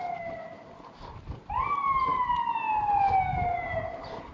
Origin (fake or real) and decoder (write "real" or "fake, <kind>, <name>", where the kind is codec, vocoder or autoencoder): real